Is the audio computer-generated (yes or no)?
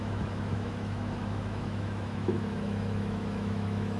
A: yes